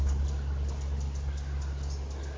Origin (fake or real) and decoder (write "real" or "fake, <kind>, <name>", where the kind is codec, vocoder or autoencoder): real